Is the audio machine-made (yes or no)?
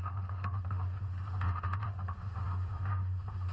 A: yes